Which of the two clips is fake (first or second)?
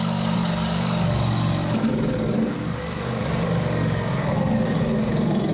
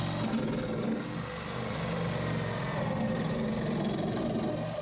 first